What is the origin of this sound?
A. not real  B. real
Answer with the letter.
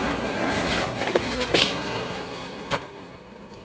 A